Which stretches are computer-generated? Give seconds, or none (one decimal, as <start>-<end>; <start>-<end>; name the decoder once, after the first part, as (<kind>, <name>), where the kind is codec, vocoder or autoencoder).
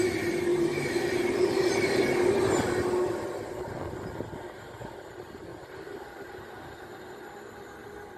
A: 0.5-1.7 (vocoder, BigVGAN v2); 5.5-6.9